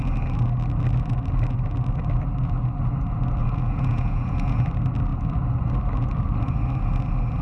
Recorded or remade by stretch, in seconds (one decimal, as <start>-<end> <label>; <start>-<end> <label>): 0.0-3.4 recorded; 3.4-4.6 remade; 4.6-7.4 recorded